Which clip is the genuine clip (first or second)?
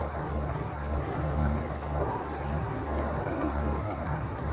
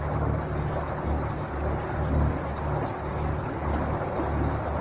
second